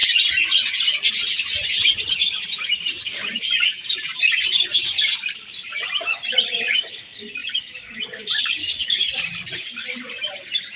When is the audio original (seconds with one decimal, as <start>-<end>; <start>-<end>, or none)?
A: 0.0-1.1